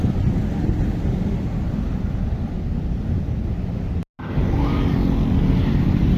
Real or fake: real